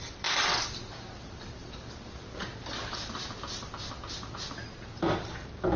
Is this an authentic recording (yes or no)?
yes